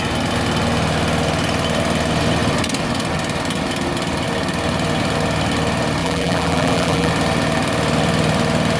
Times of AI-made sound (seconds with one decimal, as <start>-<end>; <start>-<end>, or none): 6.0-7.1